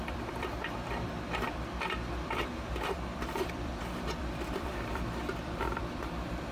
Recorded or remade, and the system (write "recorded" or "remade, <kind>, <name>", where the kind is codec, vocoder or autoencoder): remade, vocoder, BigVGAN v2